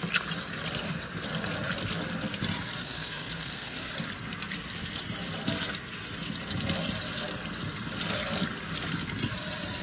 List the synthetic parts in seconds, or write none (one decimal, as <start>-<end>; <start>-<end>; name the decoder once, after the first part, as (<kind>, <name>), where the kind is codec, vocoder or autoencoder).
2.8-3.9 (codec, SNAC)